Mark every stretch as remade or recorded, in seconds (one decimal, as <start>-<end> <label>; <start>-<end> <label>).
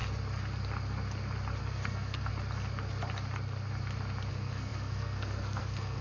0.0-1.6 recorded; 1.6-2.3 remade; 2.3-4.3 recorded; 4.3-6.0 remade